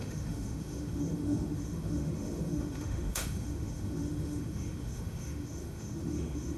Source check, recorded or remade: remade